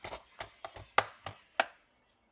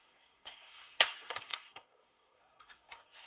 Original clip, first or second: first